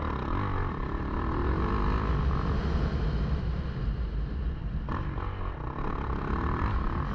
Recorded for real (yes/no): yes